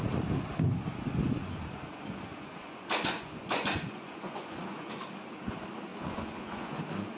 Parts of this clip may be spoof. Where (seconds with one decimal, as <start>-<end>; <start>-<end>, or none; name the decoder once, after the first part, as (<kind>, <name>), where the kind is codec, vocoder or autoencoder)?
1.4-5.0 (vocoder, Vocos); 5.9-6.8